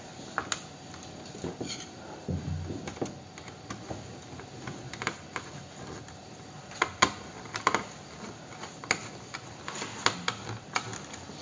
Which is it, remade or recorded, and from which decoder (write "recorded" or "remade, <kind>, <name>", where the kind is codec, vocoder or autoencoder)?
recorded